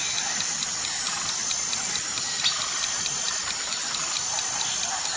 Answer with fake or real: real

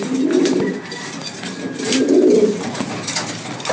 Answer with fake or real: real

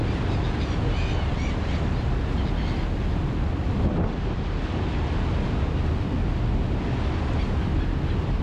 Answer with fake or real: real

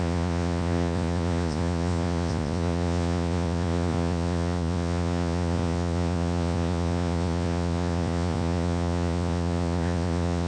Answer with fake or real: fake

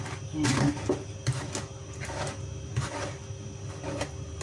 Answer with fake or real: real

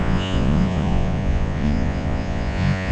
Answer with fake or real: fake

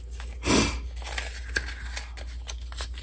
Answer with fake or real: real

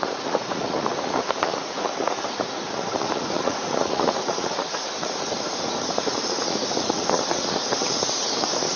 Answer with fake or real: fake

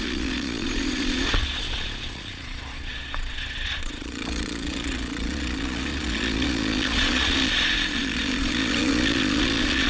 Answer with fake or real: fake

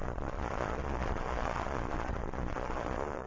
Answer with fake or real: fake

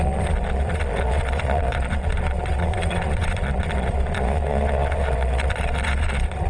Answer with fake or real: fake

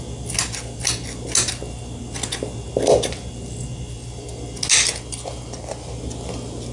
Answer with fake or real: real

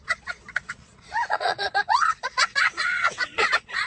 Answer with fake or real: fake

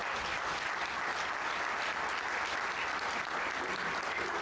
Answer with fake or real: real